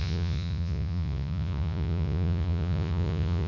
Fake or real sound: fake